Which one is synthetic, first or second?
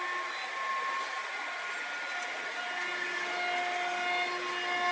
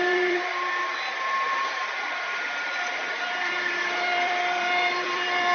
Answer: second